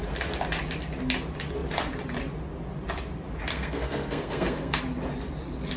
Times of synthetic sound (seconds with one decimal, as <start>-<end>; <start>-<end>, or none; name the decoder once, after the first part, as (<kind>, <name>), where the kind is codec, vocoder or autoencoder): 3.5-4.8 (codec, SNAC)